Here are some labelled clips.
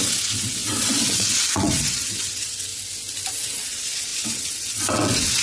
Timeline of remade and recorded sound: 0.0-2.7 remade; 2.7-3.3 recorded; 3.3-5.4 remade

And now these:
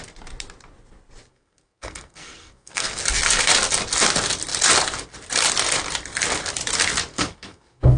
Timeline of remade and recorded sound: 0.0-1.3 recorded; 1.3-3.0 remade; 3.0-7.1 recorded; 7.1-8.0 remade

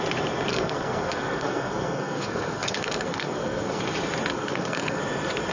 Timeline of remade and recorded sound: 0.0-0.5 recorded; 0.5-3.8 remade; 3.8-4.3 recorded; 4.3-5.0 remade; 5.0-5.5 recorded